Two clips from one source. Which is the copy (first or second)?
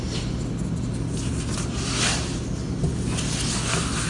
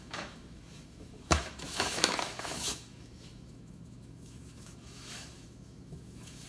second